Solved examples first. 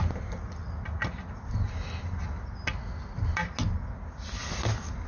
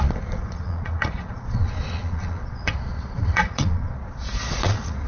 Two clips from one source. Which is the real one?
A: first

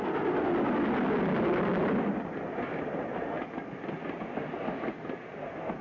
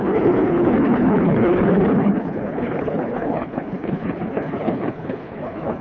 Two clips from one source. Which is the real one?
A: first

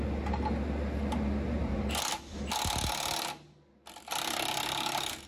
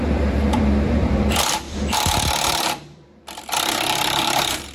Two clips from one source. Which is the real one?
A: first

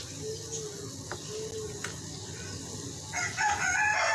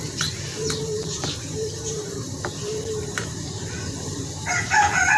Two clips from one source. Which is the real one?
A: first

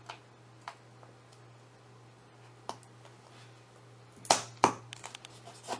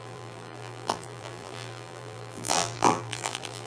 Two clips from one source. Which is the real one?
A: first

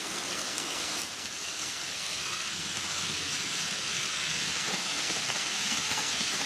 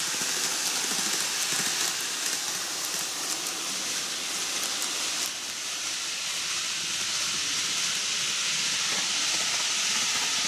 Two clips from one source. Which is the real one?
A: second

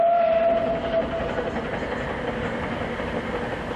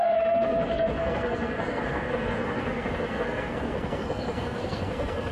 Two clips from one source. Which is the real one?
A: first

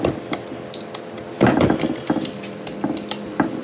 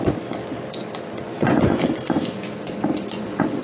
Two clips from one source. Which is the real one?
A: first